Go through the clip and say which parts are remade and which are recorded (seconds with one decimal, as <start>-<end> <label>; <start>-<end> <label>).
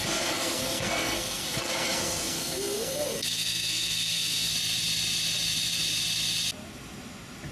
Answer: 0.0-4.5 remade; 4.5-7.5 recorded